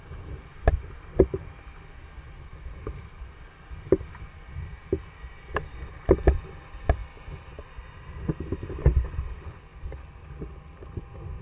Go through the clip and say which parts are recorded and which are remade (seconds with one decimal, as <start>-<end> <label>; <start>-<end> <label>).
0.0-11.4 recorded